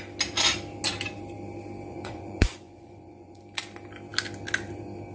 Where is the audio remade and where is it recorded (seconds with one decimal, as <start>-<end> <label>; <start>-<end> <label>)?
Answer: 0.0-1.9 recorded; 1.9-3.4 remade; 3.4-5.1 recorded